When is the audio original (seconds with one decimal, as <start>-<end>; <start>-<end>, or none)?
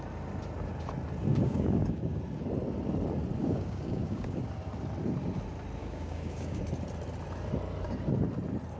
0.0-1.3; 2.2-3.4; 4.4-5.8; 6.6-8.8